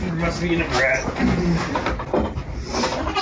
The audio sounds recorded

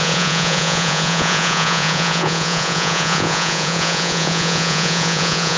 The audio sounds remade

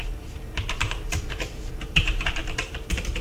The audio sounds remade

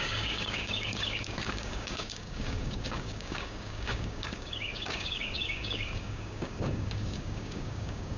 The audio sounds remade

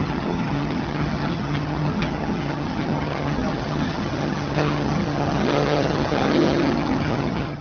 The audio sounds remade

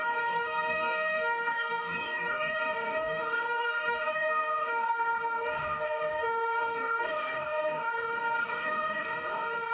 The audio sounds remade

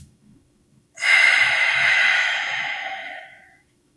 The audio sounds remade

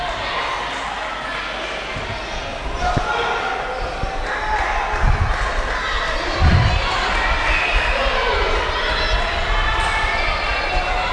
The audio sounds recorded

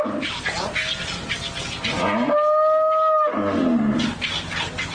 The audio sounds recorded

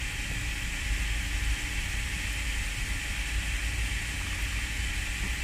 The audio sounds recorded